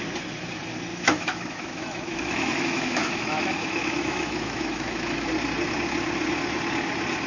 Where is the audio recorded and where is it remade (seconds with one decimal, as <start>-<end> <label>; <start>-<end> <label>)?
0.0-0.9 recorded; 0.9-5.3 remade; 5.3-7.3 recorded